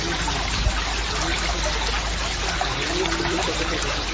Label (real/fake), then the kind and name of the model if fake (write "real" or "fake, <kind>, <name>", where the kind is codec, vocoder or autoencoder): real